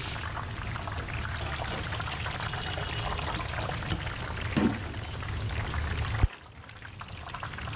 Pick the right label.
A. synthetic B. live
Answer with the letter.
B